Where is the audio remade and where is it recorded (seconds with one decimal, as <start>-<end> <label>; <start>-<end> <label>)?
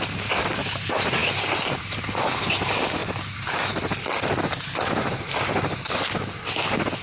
0.0-7.0 recorded